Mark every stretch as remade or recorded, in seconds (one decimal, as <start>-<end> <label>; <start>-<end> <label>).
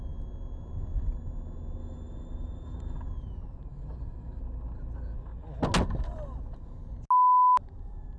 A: 0.0-1.8 recorded; 1.8-3.0 remade; 3.0-3.7 recorded; 3.7-4.4 remade; 4.4-8.2 recorded